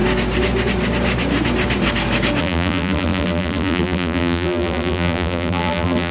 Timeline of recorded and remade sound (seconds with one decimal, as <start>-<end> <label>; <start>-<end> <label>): 0.0-2.4 recorded; 2.4-6.1 remade